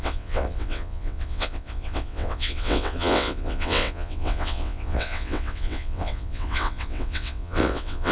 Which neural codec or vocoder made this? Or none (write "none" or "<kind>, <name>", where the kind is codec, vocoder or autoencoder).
vocoder, WaveNeXt